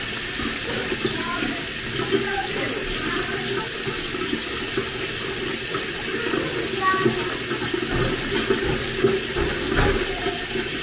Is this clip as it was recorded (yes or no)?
yes